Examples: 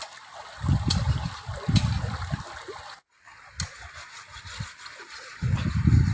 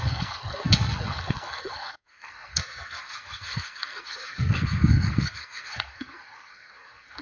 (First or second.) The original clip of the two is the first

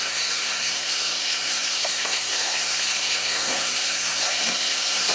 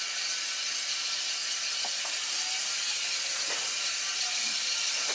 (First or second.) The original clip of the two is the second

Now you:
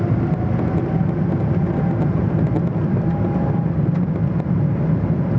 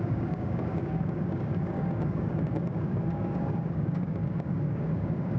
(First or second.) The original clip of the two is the first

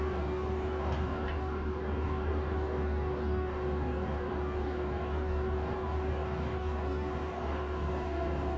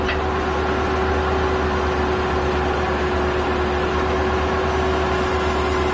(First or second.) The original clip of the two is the second